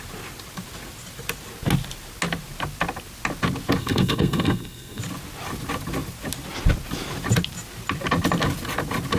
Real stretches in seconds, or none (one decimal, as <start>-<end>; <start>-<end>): 0.0-3.8; 5.0-9.2